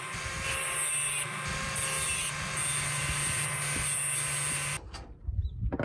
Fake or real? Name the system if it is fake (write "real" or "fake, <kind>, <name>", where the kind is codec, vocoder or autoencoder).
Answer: real